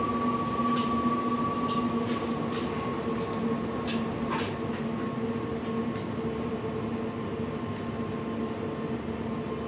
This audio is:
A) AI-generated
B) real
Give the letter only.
B